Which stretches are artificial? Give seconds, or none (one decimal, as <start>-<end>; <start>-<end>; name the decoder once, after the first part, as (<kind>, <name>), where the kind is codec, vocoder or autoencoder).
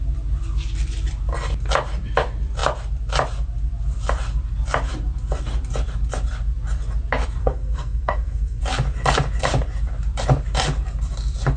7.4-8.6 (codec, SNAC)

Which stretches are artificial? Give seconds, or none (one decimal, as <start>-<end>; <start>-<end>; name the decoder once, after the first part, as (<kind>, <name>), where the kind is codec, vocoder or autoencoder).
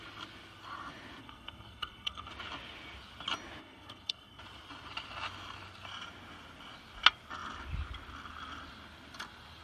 1.2-2.3 (codec, SNAC); 3.6-4.4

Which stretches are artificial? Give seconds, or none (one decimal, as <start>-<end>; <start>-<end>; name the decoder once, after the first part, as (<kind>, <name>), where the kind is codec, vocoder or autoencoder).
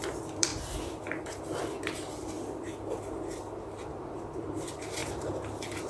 0.0-0.5 (vocoder, BigVGAN v2); 4.0-5.0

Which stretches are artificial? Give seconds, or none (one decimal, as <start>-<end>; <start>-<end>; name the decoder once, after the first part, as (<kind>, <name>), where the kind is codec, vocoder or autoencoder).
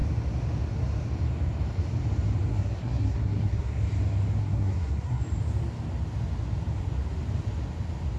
2.5-3.8 (codec, SNAC); 4.4-5.2